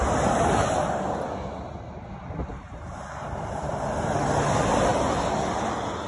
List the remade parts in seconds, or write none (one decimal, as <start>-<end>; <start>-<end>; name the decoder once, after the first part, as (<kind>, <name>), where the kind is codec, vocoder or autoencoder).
2.5-3.7 (vocoder, BigVGAN v2)